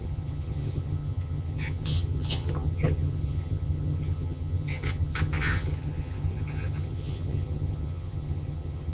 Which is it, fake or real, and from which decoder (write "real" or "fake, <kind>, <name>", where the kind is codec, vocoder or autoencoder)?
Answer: fake, vocoder, HiFi-GAN